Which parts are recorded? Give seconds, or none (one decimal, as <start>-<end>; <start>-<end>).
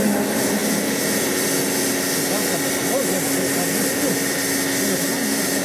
0.0-5.6